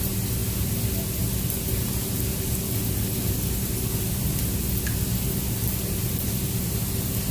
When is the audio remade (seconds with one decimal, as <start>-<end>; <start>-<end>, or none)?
none

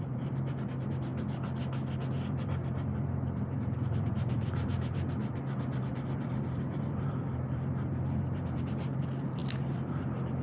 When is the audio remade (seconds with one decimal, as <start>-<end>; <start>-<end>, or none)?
0.0-1.1; 2.1-10.4

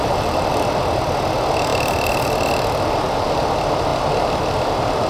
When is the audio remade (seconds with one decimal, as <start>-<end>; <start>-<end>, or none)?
0.0-0.5; 1.7-3.5